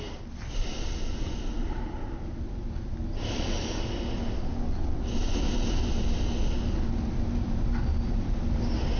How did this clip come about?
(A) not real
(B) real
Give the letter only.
B